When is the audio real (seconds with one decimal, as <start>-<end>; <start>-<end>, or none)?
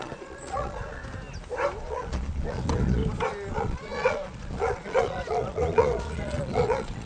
1.0-1.8; 3.0-3.5